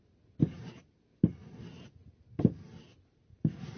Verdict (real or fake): real